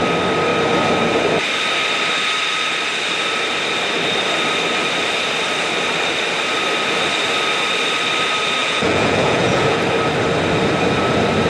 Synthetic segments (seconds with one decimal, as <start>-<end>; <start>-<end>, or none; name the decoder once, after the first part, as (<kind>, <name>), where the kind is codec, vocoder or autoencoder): 8.6-9.8 (vocoder, Vocos)